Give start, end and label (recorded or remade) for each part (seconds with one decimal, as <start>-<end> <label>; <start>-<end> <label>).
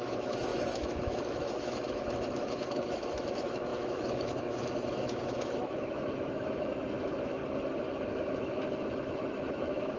0.0-7.4 remade; 7.4-8.1 recorded; 8.1-10.0 remade